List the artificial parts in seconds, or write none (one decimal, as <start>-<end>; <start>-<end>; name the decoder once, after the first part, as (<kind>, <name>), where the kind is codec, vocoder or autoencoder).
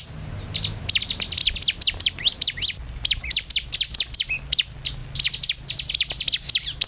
none